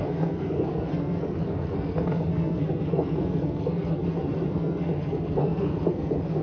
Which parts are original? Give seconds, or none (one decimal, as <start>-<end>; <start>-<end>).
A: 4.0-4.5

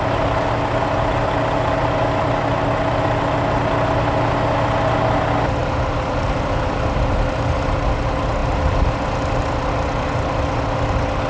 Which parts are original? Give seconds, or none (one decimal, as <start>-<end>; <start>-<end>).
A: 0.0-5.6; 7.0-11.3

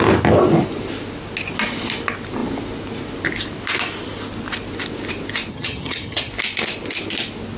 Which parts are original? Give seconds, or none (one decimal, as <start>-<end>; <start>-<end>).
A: 0.0-5.5; 6.3-7.6

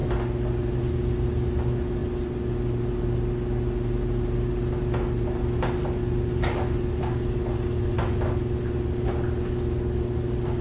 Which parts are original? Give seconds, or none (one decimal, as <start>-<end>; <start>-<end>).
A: 0.0-10.6